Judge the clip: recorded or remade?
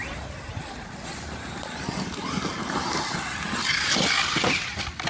recorded